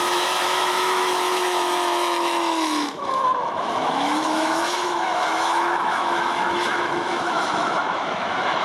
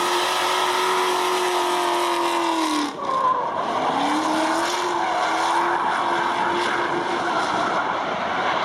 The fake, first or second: first